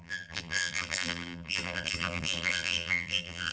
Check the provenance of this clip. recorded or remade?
remade